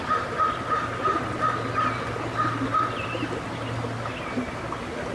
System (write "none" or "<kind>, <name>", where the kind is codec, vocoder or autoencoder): none